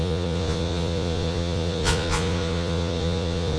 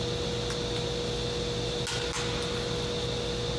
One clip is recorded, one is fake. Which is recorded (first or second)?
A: second